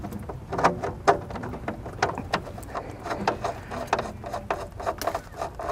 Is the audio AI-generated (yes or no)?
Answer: no